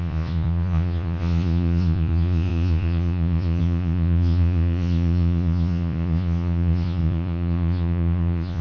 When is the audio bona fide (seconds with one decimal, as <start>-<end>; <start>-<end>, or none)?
none